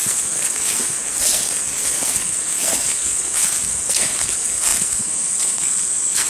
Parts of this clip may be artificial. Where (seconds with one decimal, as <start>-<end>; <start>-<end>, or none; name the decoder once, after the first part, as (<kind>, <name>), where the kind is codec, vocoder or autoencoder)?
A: 0.0-6.3 (codec, SNAC)